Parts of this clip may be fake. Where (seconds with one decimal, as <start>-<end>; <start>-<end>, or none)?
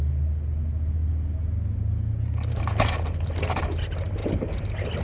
none